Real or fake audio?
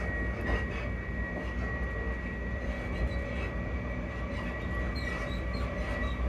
real